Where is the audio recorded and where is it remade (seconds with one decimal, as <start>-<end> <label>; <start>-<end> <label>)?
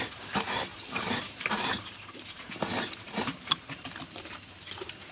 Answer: 0.0-0.7 recorded; 0.7-3.8 remade; 3.8-5.1 recorded